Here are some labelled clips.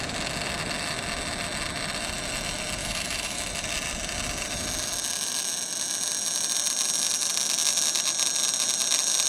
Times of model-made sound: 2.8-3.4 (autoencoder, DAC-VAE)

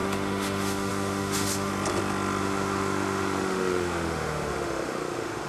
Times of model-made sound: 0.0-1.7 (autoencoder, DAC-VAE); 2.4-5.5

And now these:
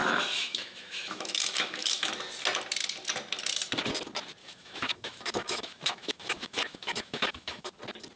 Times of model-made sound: 0.0-2.1 (autoencoder, DAC-VAE); 4.4-7.7